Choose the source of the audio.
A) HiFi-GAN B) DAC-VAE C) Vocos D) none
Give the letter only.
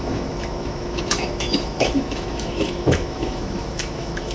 B